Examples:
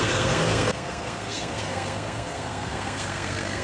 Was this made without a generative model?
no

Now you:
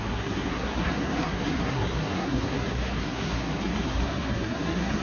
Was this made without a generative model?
no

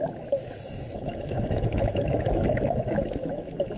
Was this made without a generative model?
no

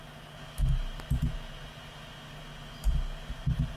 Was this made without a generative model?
yes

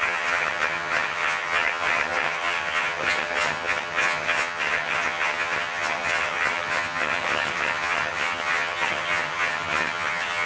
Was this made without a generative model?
no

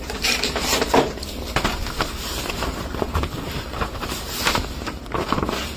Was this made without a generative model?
no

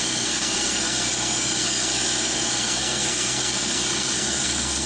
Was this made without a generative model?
no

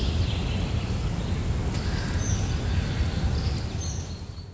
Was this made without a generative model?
yes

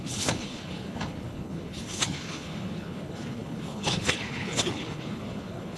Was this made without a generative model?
no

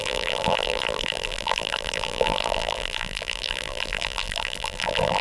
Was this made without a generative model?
no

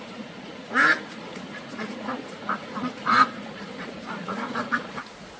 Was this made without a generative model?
no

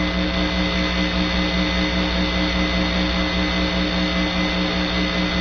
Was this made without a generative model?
yes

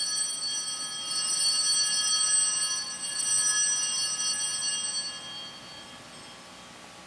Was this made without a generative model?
yes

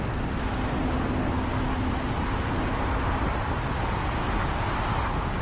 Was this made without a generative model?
yes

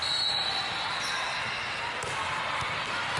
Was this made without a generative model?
yes